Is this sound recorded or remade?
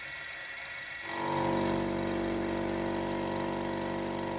recorded